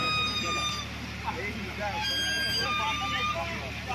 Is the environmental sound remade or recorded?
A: recorded